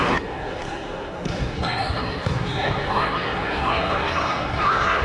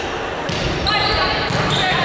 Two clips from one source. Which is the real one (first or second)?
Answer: second